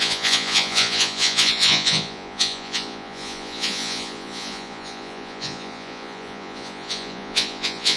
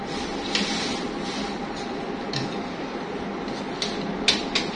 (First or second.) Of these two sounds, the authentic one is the second